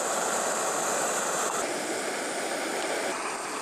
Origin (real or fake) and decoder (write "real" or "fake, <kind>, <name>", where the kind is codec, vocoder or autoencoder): real